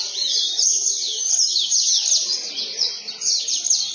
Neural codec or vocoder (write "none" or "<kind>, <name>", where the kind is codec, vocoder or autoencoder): none